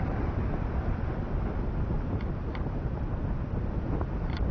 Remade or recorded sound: recorded